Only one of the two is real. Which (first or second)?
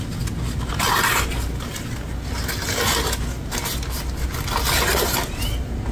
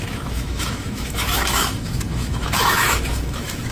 first